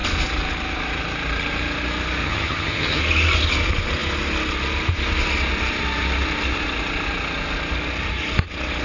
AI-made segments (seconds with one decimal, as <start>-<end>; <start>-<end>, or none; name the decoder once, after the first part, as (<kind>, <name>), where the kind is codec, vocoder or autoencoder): 2.2-3.0 (vocoder, HiFi-GAN)